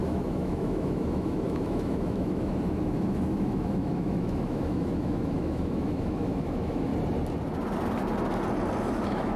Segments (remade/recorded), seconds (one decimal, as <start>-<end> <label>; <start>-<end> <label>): 0.0-6.9 remade; 6.9-8.8 recorded; 8.8-9.4 remade